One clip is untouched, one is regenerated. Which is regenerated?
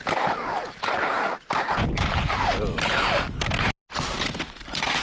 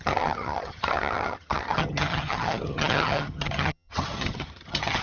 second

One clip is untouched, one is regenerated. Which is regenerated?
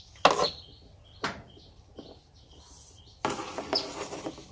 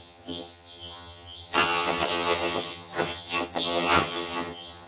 second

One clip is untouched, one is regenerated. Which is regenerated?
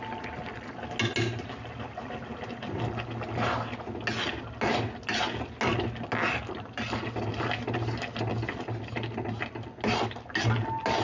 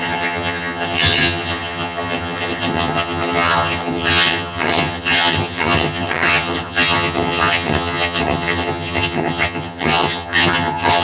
second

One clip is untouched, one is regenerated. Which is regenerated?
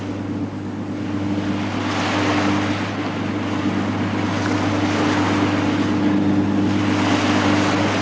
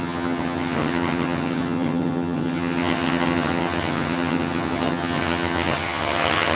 second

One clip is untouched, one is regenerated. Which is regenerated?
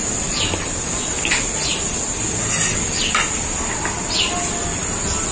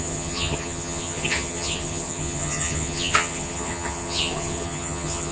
second